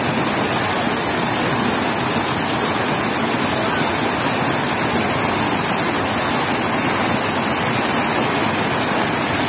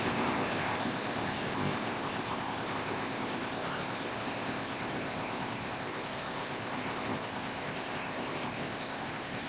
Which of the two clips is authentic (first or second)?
first